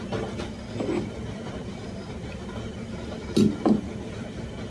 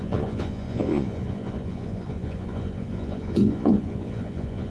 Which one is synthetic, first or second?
second